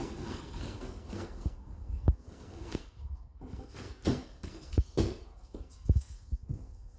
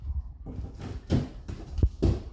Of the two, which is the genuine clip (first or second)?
second